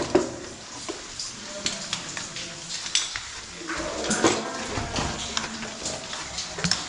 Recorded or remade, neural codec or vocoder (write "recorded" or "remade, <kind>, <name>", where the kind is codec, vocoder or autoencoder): recorded